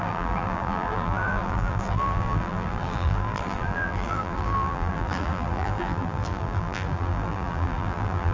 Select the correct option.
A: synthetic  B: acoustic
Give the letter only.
A